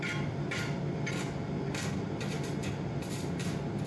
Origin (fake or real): real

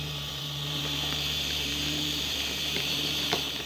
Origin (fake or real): fake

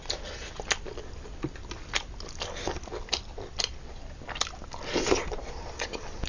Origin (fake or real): real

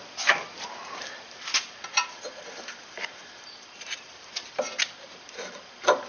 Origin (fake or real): real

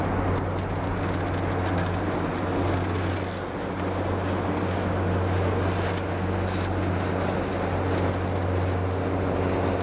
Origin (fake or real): real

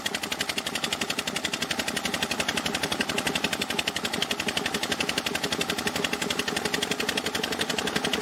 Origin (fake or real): real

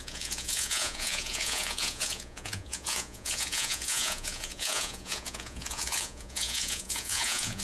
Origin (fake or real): fake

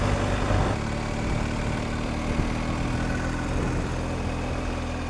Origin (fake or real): real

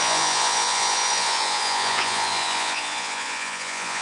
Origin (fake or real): fake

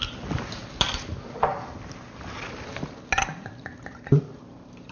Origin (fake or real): real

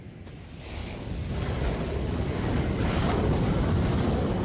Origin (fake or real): fake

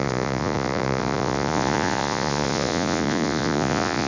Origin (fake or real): fake